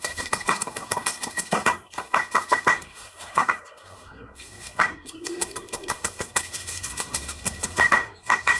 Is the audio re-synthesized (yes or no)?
yes